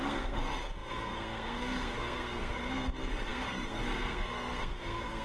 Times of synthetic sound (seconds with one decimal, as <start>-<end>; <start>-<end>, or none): 0.0-5.2